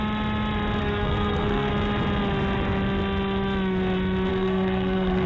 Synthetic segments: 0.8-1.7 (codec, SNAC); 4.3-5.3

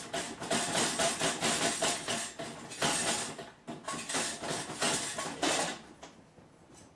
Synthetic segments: none